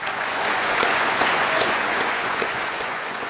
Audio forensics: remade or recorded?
remade